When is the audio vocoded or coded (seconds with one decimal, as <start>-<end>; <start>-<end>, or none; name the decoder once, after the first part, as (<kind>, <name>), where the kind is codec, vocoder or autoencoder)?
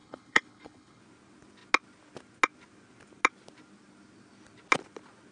0.0-1.0 (codec, HILCodec)